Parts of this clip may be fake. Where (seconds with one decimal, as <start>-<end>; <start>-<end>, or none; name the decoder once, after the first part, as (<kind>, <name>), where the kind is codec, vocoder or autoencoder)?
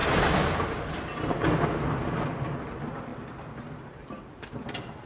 none